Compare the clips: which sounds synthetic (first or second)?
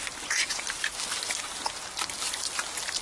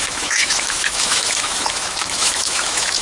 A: second